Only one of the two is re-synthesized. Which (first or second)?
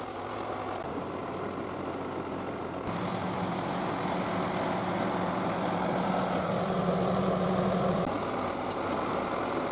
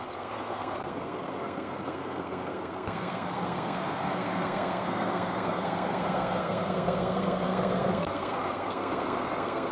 second